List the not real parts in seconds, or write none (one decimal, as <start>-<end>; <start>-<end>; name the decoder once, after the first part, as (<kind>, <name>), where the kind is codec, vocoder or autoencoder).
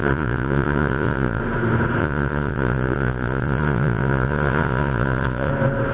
0.0-1.4 (vocoder, Vocos); 2.0-5.5